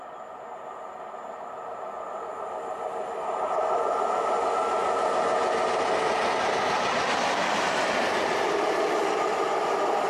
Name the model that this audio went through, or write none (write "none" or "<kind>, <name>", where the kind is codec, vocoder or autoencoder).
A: none